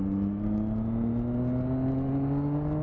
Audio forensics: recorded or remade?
recorded